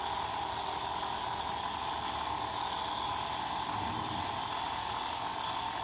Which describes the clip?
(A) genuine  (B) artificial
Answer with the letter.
A